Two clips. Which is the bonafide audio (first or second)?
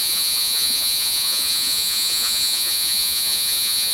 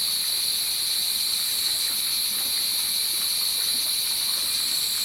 second